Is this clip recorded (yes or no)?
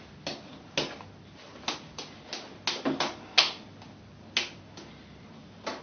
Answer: yes